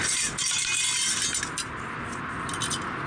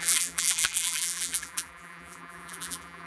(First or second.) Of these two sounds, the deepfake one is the second